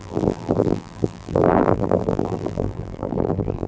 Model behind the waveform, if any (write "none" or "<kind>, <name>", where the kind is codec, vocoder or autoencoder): vocoder, BigVGAN v2